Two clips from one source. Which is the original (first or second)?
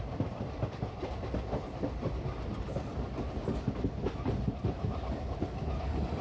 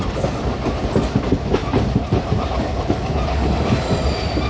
second